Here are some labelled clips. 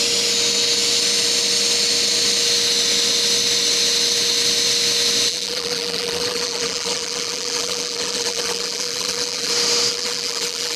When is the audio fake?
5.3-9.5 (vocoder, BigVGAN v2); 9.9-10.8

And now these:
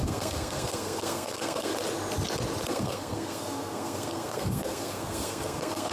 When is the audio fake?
0.0-1.7 (codec, SNAC); 2.7-5.9

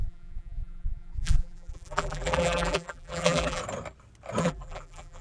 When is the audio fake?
0.0-3.6 (vocoder, BigVGAN v2); 4.4-5.2